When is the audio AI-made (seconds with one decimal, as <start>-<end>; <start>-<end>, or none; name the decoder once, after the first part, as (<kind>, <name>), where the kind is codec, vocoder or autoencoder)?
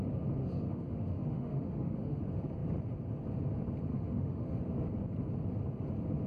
0.4-2.2 (autoencoder, DAC-VAE); 3.9-4.6